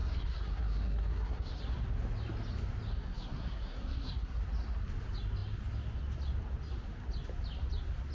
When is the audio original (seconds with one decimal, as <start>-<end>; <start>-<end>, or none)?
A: 1.6-2.9; 4.4-8.1